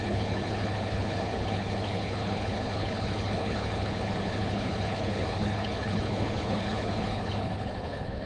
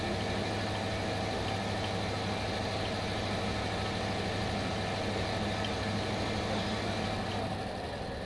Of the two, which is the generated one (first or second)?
first